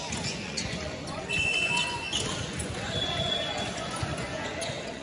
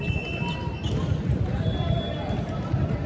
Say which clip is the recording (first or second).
second